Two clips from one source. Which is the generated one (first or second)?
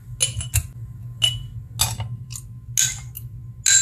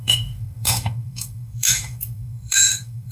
second